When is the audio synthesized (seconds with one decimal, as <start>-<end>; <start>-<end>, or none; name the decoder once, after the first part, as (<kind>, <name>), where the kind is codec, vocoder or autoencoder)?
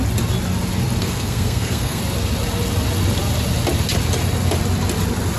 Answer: 1.0-2.0 (codec, SNAC)